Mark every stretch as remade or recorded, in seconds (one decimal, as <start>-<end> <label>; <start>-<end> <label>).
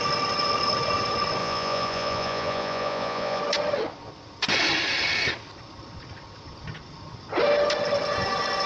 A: 0.0-1.4 recorded; 1.4-3.4 remade; 3.4-8.7 recorded